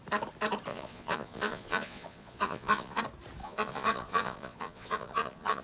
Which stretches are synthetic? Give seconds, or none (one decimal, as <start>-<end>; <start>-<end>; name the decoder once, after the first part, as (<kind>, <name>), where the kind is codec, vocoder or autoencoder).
0.7-3.0 (vocoder, Vocos); 3.4-5.6